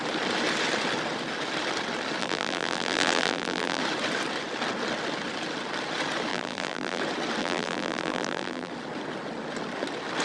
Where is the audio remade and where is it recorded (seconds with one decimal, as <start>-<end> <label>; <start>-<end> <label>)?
0.0-2.2 recorded; 2.2-3.8 remade; 3.8-6.3 recorded; 6.3-7.0 remade; 7.0-7.4 recorded; 7.4-8.7 remade; 8.7-10.2 recorded